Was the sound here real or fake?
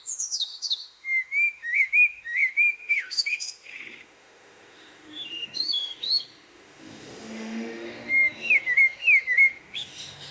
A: fake